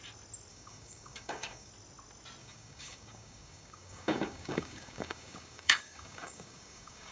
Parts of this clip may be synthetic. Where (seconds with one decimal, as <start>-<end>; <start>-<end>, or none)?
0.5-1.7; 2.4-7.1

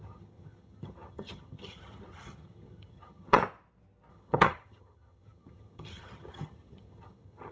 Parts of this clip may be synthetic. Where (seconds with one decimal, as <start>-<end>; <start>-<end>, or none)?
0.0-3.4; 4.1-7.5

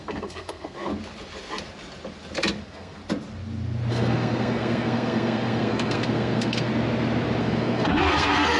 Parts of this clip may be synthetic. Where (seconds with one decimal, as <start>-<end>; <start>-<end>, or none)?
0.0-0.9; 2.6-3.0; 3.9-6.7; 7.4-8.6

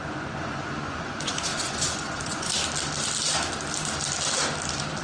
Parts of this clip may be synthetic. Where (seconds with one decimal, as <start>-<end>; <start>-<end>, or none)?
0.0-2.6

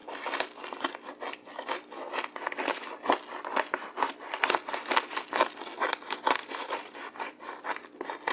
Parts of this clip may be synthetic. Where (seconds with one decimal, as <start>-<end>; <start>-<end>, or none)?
6.4-7.7

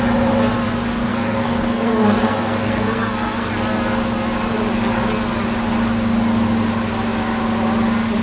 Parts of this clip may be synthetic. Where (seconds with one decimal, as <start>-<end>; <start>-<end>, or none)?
1.1-3.5

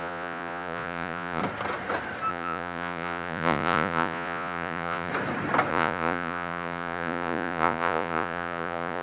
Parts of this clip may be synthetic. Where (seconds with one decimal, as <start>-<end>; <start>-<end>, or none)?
0.0-1.4; 2.3-5.1; 5.7-9.0

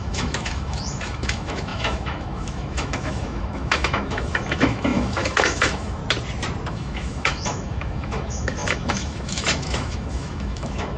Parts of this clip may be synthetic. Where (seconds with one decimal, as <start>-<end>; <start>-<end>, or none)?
0.0-6.0; 6.7-11.0